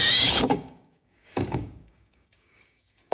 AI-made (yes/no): yes